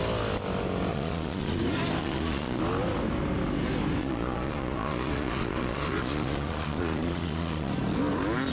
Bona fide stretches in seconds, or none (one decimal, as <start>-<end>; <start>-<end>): 0.0-0.9; 1.6-2.0; 2.6-4.0; 7.7-8.5